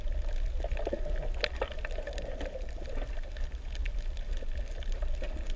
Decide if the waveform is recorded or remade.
recorded